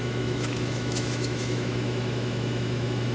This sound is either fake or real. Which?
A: fake